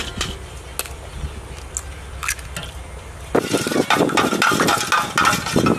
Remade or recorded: recorded